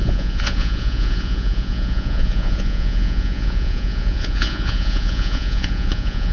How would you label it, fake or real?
fake